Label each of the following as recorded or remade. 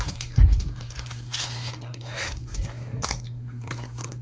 remade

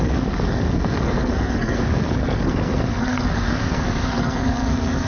remade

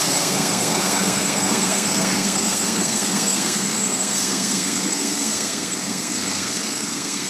remade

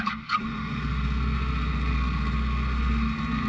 remade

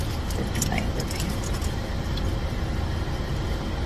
recorded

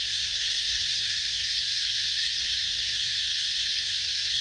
remade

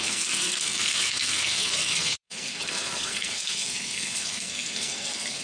remade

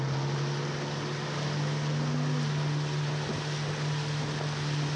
recorded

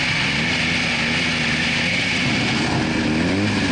recorded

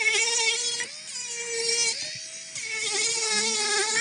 recorded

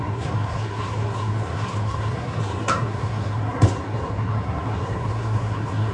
remade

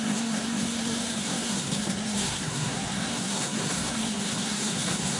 remade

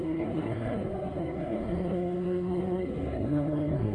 remade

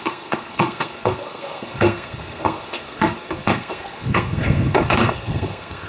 remade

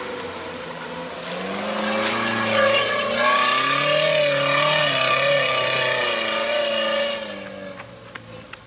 recorded